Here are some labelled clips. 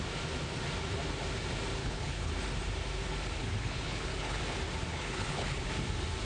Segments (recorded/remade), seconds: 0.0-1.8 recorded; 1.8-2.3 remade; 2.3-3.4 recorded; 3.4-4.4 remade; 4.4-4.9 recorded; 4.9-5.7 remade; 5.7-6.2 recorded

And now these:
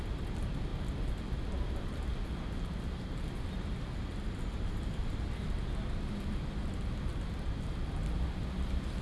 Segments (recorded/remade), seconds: 0.0-9.0 recorded

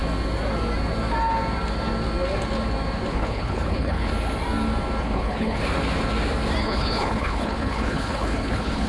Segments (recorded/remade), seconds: 0.0-3.1 recorded; 3.1-4.1 remade; 4.1-5.0 recorded; 5.0-5.6 remade; 5.6-6.6 recorded; 6.6-8.9 remade